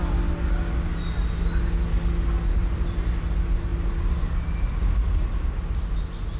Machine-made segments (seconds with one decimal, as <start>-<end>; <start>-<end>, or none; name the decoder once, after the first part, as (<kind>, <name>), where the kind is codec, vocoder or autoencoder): none